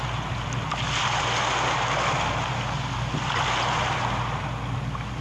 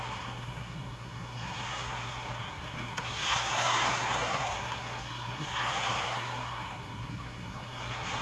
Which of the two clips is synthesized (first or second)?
second